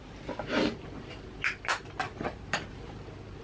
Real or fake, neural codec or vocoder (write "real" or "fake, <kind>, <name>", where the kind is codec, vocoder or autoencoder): real